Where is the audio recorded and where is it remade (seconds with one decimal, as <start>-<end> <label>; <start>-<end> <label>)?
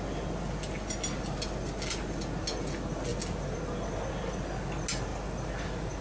0.0-6.0 recorded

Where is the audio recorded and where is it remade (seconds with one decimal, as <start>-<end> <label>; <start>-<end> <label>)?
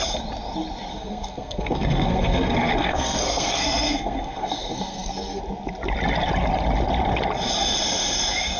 0.0-0.9 recorded; 0.9-5.4 remade; 5.4-8.6 recorded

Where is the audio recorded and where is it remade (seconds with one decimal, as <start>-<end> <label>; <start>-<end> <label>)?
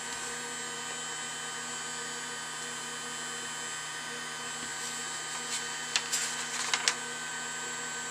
0.0-8.1 recorded